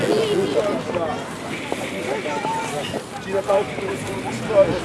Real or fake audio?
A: real